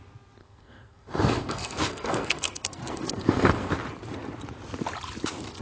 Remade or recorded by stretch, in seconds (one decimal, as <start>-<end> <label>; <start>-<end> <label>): 0.0-0.4 recorded; 0.4-3.7 remade; 3.7-5.6 recorded